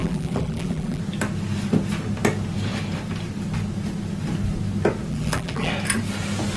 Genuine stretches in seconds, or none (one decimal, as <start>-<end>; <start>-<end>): 1.0-5.1; 5.7-6.6